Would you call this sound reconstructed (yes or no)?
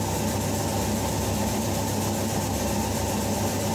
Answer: no